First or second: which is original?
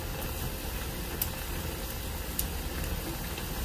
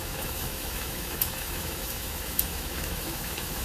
first